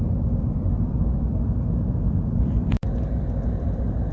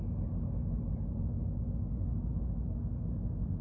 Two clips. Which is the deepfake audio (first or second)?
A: first